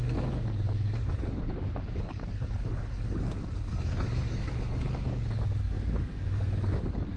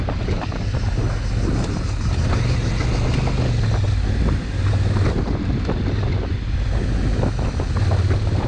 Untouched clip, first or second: second